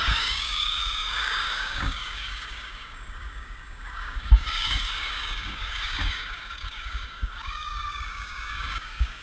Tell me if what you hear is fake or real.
fake